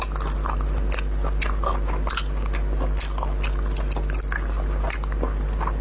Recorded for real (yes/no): yes